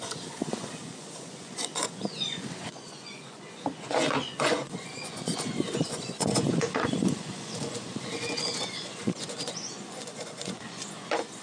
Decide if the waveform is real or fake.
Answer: fake